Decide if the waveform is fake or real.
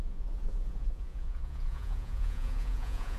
fake